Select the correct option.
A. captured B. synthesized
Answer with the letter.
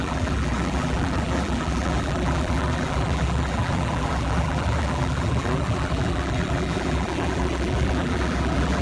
B